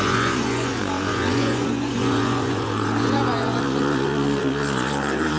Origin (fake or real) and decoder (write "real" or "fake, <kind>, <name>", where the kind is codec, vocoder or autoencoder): fake, vocoder, Vocos